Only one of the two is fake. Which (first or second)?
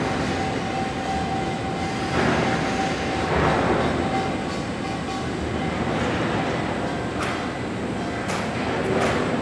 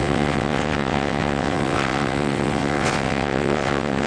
second